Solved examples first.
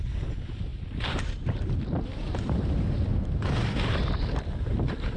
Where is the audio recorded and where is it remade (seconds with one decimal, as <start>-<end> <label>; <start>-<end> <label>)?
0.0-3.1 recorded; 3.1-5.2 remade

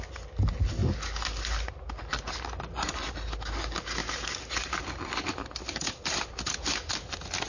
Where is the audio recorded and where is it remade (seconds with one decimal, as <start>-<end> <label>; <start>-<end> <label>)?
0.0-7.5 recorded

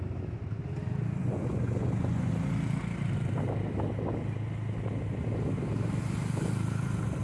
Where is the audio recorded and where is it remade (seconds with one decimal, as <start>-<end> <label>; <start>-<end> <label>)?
0.0-1.2 recorded; 1.2-2.3 remade; 2.3-7.2 recorded